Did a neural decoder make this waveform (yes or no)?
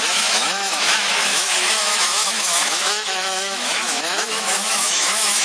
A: yes